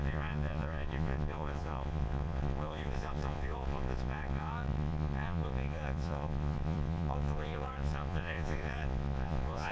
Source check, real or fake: fake